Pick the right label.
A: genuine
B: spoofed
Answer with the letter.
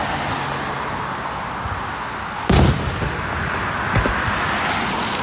A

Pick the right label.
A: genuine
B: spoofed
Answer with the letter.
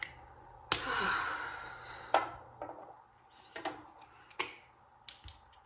A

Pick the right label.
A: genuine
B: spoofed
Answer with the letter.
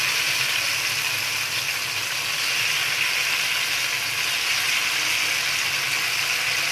A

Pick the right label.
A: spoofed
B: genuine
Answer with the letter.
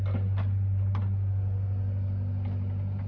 B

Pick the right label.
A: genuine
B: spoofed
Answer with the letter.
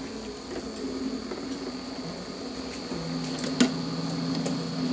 A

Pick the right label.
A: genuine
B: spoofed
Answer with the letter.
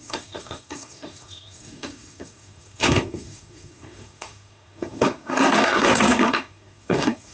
B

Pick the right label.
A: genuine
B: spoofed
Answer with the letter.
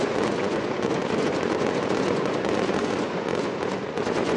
B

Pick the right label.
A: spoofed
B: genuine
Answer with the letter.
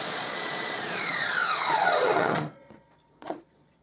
A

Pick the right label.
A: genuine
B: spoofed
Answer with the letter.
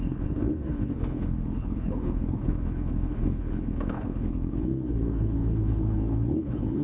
B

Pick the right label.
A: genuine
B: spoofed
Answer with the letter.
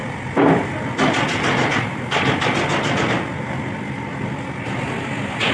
A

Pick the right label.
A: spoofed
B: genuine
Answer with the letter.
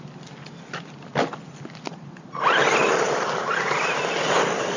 B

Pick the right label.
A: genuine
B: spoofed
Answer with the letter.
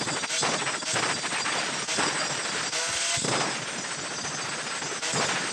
A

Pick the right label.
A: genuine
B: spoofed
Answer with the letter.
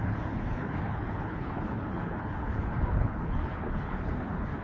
B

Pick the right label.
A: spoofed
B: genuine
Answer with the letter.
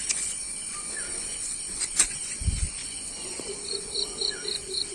A